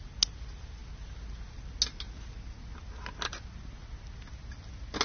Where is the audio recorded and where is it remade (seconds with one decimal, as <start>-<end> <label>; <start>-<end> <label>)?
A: 0.0-5.0 recorded